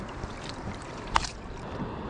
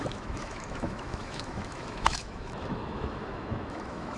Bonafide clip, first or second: first